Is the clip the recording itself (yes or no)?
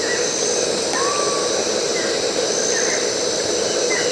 yes